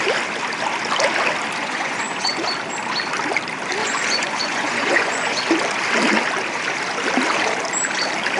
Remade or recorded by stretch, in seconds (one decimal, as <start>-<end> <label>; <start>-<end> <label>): 0.0-1.6 recorded; 1.6-2.4 remade; 2.4-3.8 recorded; 3.8-5.4 remade; 5.4-8.4 recorded